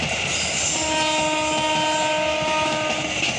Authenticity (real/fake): real